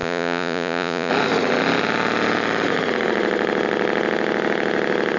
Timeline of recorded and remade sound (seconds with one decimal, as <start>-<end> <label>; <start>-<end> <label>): 0.0-1.1 remade; 1.1-5.2 recorded